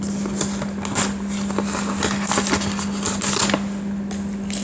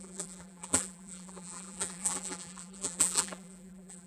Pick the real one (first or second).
first